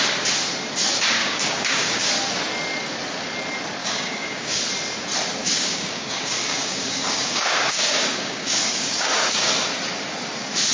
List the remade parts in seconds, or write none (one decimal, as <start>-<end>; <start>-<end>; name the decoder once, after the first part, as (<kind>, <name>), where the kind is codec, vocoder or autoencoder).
1.2-2.1 (codec, DAC); 3.8-4.6; 5.4-9.5